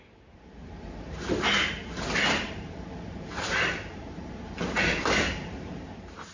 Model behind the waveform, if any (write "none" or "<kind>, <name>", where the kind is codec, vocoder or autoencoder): vocoder, BigVGAN v2